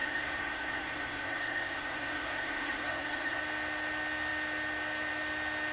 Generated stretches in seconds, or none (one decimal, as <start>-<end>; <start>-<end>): 0.0-3.4